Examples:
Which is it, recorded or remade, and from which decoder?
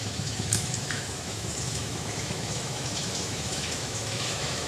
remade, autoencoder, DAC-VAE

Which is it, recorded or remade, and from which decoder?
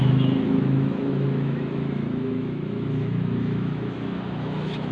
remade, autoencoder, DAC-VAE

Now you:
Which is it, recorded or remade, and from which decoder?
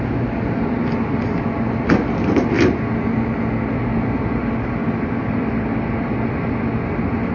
recorded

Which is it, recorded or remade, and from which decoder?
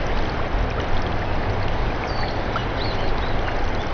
recorded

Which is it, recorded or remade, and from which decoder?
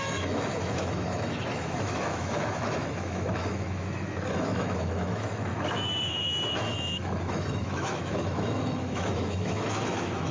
remade, autoencoder, DAC-VAE